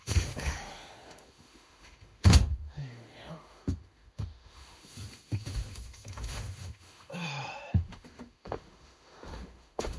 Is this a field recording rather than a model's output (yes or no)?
no